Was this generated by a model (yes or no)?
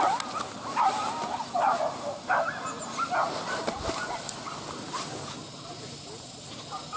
no